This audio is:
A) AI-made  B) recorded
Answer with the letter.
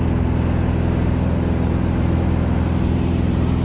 B